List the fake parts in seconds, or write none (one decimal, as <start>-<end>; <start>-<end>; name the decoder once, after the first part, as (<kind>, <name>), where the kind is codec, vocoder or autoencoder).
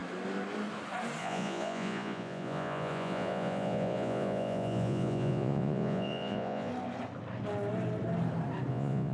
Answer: 1.2-6.7 (vocoder, Vocos); 8.7-9.1